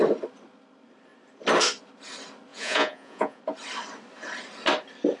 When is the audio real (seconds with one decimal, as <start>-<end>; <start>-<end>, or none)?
0.0-2.5; 3.4-5.2